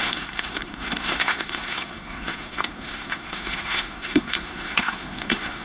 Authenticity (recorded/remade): remade